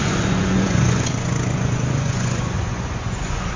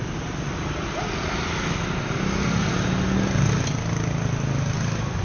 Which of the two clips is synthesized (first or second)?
first